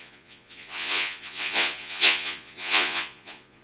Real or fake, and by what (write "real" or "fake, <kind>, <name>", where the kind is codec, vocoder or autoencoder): fake, vocoder, Vocos